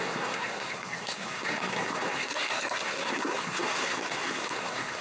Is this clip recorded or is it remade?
remade